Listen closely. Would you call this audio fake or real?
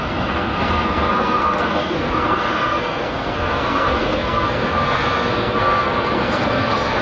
fake